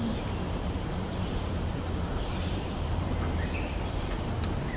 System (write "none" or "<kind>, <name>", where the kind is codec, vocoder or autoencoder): vocoder, BigVGAN v2